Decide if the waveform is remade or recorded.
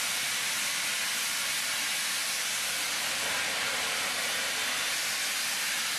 recorded